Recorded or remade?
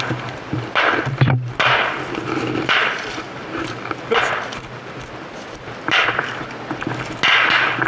recorded